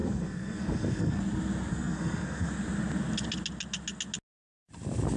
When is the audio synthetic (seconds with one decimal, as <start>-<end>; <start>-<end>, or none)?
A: 0.0-1.2; 1.7-2.5